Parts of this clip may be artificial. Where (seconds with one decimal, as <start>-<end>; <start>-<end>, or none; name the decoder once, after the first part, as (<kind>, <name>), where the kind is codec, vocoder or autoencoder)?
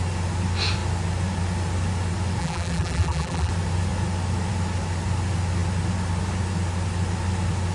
2.4-3.5 (vocoder, BigVGAN v2)